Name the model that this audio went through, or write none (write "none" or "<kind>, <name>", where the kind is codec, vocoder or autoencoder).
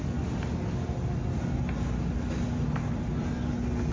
none